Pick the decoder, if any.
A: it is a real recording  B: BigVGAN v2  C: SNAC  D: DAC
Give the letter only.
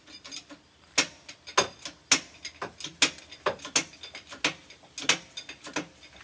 A